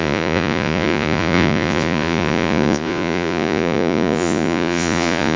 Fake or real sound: fake